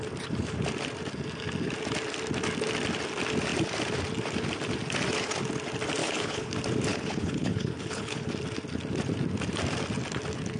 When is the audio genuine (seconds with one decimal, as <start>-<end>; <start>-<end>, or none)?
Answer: 0.0-6.0; 6.5-6.9; 8.3-10.6